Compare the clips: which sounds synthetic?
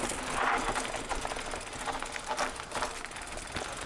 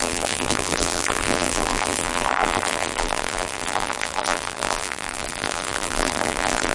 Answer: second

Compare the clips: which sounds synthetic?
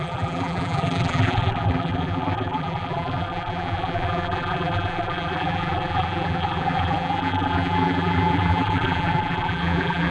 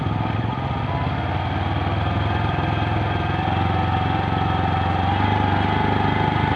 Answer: first